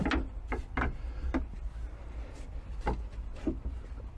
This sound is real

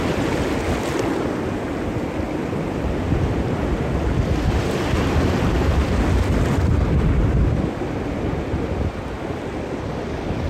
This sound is real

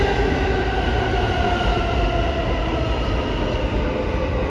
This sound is real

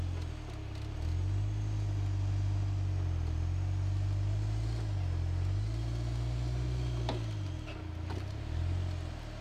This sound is real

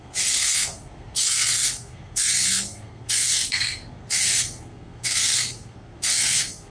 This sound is fake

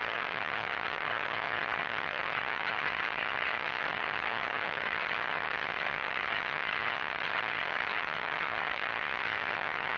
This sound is fake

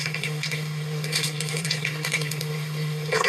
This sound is fake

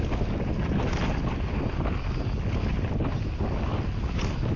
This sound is real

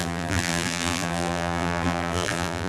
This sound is fake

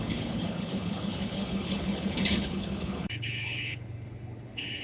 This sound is fake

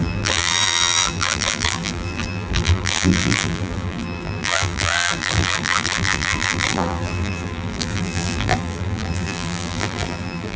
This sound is fake